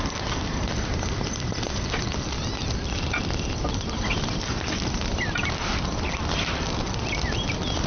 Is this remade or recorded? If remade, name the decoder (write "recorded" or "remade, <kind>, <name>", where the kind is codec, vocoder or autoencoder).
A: recorded